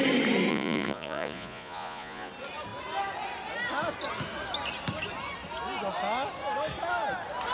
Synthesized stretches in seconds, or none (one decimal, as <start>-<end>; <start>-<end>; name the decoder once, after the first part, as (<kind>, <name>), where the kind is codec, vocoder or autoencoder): 0.5-2.3 (vocoder, Vocos)